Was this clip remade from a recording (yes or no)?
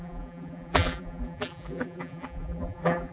yes